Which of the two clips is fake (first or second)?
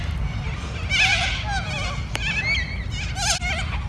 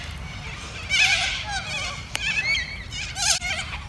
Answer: second